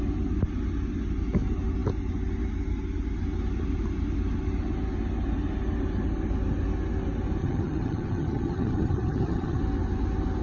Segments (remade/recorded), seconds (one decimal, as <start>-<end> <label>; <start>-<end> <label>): 0.0-7.4 recorded; 7.4-9.6 remade; 9.6-10.4 recorded